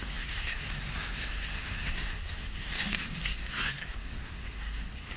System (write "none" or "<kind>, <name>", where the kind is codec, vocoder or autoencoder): codec, SNAC